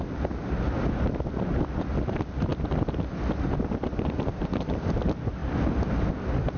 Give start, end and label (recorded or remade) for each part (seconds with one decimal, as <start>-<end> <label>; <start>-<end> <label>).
0.0-6.6 recorded

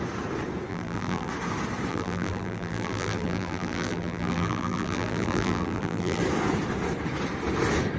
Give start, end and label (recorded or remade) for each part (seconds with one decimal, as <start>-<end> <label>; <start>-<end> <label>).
0.0-0.7 recorded; 0.7-1.3 remade; 1.3-1.9 recorded; 1.9-6.2 remade; 6.2-8.0 recorded

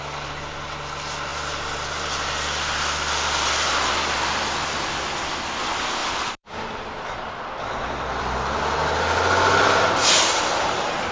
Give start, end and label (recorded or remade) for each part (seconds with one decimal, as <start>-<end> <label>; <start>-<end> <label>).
0.0-6.0 recorded; 6.0-8.0 remade; 8.0-11.1 recorded

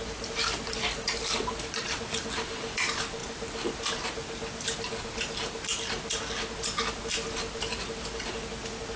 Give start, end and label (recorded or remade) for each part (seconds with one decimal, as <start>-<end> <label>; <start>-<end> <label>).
0.0-0.4 recorded; 0.4-1.2 remade; 1.2-9.0 recorded

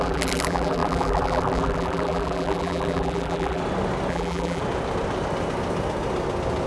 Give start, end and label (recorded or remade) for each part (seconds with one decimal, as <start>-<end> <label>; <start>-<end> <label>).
0.0-3.6 remade; 3.6-4.1 recorded; 4.1-4.6 remade; 4.6-6.7 recorded

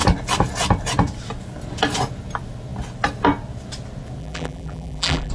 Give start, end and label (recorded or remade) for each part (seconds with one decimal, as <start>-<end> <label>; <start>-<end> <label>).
0.0-4.2 recorded; 4.2-5.3 remade

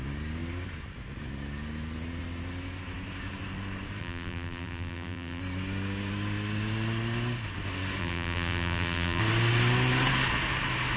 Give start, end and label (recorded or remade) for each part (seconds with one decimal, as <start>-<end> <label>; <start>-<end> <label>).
0.0-4.0 recorded; 4.0-5.4 remade; 5.4-8.0 recorded; 8.0-9.2 remade; 9.2-11.0 recorded